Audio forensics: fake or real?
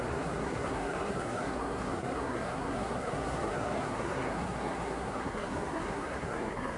fake